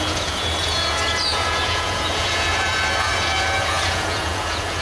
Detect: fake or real fake